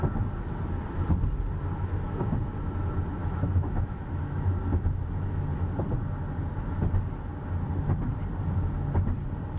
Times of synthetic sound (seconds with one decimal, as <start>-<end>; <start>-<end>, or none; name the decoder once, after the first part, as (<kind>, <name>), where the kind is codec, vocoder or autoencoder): 3.2-4.5 (autoencoder, DAC-VAE)

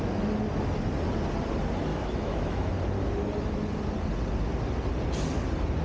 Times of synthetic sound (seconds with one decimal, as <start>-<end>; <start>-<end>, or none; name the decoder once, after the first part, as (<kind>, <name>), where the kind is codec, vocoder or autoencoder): 1.9-2.7 (autoencoder, DAC-VAE)

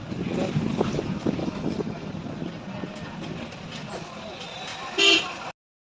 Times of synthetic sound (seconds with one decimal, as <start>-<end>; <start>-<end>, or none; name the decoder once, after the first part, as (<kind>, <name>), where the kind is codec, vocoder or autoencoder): 1.4-2.1 (autoencoder, DAC-VAE)

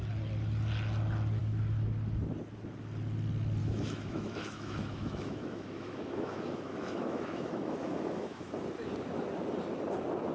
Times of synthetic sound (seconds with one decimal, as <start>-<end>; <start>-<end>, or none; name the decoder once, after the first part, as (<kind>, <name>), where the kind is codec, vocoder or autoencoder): 3.6-8.5 (autoencoder, DAC-VAE)

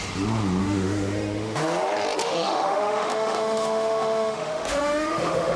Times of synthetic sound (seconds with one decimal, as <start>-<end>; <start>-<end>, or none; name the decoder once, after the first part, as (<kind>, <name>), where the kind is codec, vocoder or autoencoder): 0.6-1.6 (autoencoder, DAC-VAE); 2.2-5.6

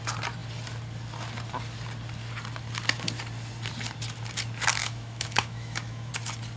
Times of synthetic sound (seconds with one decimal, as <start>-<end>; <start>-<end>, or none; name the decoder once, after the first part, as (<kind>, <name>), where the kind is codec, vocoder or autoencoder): 4.8-6.1 (autoencoder, DAC-VAE)

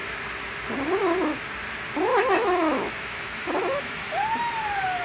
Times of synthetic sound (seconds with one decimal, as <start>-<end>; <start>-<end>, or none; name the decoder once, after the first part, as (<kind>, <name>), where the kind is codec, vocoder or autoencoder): 2.1-4.1 (autoencoder, DAC-VAE)